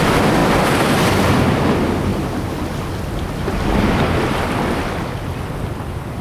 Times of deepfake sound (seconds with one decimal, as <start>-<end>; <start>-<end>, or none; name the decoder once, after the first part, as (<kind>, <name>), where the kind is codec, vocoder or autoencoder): none